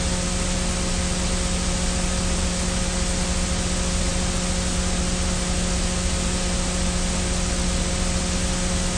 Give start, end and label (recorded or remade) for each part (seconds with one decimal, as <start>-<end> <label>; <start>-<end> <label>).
0.0-9.0 recorded

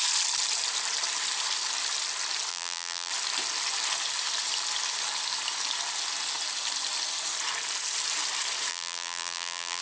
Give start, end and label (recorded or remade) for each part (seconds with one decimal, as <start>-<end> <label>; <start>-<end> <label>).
0.0-2.5 recorded; 2.5-3.1 remade; 3.1-8.7 recorded; 8.7-9.8 remade

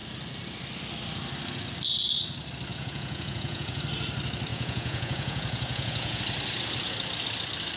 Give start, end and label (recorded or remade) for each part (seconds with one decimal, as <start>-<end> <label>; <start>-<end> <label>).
0.0-2.7 recorded; 2.7-3.8 remade; 3.8-4.5 recorded; 4.5-6.2 remade; 6.2-7.8 recorded

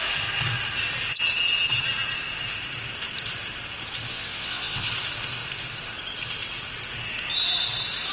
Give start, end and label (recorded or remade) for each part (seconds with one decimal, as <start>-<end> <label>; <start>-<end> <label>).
0.0-4.1 recorded; 4.1-4.9 remade; 4.9-8.1 recorded

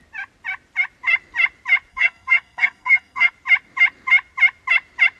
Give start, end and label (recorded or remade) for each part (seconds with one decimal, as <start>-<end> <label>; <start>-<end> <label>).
0.0-1.9 recorded; 1.9-3.3 remade; 3.3-5.2 recorded

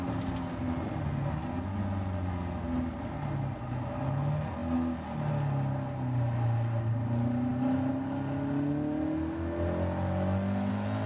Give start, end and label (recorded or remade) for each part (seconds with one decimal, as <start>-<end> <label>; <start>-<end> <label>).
0.0-11.1 recorded